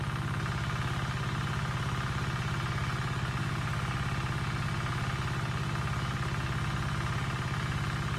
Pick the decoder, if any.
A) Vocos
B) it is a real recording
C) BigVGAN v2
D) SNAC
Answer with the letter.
B